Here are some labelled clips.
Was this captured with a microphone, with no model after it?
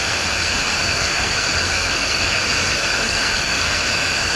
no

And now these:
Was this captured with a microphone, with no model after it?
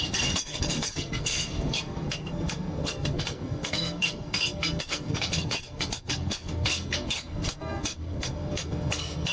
no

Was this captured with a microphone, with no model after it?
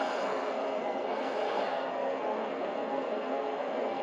no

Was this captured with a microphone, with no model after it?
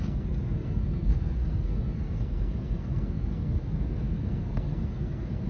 no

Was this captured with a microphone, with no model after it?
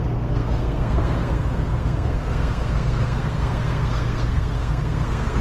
no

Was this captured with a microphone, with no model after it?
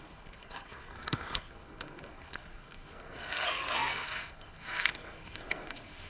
no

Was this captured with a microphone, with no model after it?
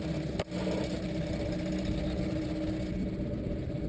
yes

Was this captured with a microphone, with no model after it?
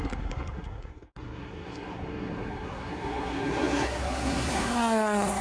no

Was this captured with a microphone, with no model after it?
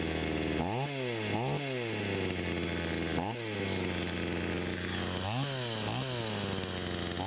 yes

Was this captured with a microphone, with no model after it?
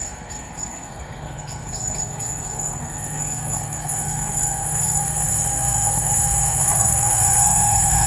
no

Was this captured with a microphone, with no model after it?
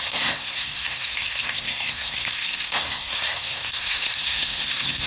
no